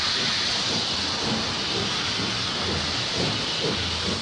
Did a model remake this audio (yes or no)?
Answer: no